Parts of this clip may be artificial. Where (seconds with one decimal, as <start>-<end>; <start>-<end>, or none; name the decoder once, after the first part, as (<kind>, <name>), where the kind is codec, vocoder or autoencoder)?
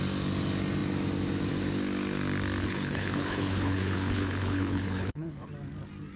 2.6-5.5 (codec, HILCodec)